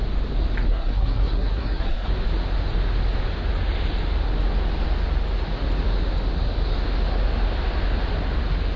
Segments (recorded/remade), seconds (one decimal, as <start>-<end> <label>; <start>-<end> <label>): 0.0-0.7 recorded; 0.7-2.1 remade; 2.1-8.8 recorded